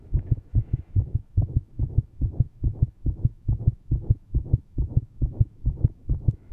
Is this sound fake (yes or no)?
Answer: yes